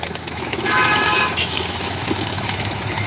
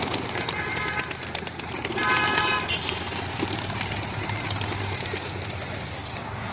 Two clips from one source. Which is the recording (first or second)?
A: second